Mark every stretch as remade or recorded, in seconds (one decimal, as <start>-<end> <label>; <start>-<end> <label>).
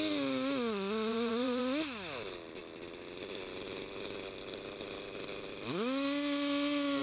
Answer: 0.0-1.1 recorded; 1.1-1.6 remade; 1.6-7.0 recorded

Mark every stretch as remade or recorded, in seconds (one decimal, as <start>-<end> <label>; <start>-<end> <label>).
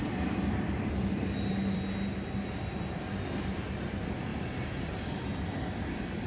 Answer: 0.0-1.8 remade; 1.8-2.5 recorded; 2.5-4.3 remade; 4.3-6.3 recorded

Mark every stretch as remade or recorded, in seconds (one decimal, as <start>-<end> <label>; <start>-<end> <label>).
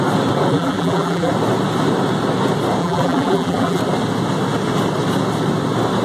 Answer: 0.0-0.5 recorded; 0.5-1.3 remade; 1.3-2.8 recorded; 2.8-3.8 remade; 3.8-6.0 recorded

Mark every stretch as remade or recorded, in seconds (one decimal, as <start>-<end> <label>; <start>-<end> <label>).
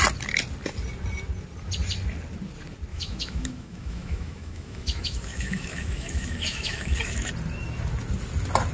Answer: 0.0-2.9 recorded; 2.9-7.3 remade; 7.3-8.7 recorded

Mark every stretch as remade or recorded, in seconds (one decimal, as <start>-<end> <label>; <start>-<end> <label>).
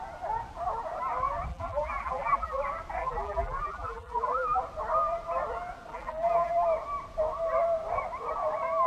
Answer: 0.0-1.5 recorded; 1.5-2.6 remade; 2.6-3.0 recorded; 3.0-4.6 remade; 4.6-5.9 recorded; 5.9-6.5 remade; 6.5-8.9 recorded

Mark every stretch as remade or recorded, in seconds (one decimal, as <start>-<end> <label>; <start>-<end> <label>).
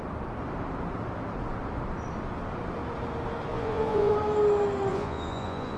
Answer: 0.0-3.5 recorded; 3.5-4.1 remade; 4.1-4.9 recorded; 4.9-5.8 remade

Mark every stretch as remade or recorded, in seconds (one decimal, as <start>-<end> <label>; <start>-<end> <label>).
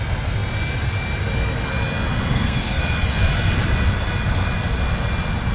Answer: 0.0-2.3 recorded; 2.3-2.8 remade; 2.8-5.5 recorded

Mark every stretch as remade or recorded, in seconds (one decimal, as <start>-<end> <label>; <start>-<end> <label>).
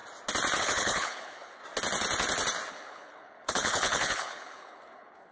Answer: 0.0-0.6 recorded; 0.6-1.6 remade; 1.6-2.7 recorded; 2.7-5.3 remade